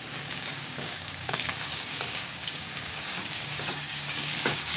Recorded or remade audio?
remade